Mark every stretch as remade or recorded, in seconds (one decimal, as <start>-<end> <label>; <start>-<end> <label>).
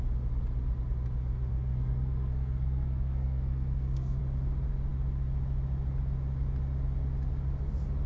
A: 0.0-1.5 recorded; 1.5-4.2 remade; 4.2-8.1 recorded